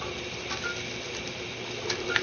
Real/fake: real